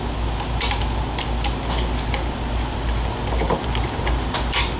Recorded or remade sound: recorded